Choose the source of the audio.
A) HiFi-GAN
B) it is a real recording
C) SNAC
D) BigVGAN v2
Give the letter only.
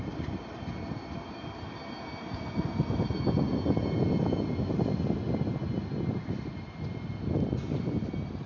B